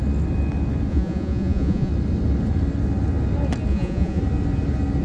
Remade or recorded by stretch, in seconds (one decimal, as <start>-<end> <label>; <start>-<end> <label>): 0.0-0.9 recorded; 0.9-1.9 remade; 1.9-3.7 recorded; 3.7-4.2 remade; 4.2-5.0 recorded